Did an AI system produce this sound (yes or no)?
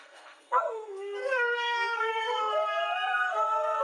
yes